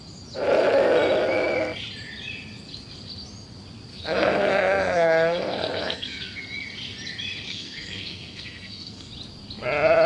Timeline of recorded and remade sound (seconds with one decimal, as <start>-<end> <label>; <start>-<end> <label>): 0.0-3.9 recorded; 3.9-6.4 remade; 6.4-7.5 recorded; 7.5-9.1 remade; 9.1-10.1 recorded